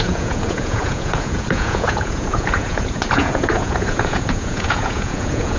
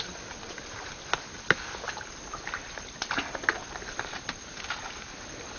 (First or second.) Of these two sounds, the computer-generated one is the first